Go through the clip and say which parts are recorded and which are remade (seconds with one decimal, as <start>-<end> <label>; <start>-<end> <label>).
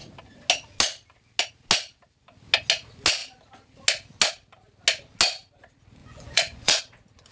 0.0-6.0 recorded; 6.0-6.8 remade; 6.8-7.3 recorded